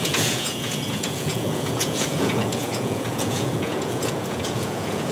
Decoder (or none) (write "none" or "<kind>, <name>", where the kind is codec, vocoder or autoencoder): vocoder, Vocos